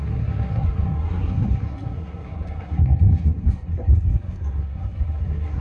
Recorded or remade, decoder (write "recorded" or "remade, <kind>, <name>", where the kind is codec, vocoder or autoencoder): remade, codec, SNAC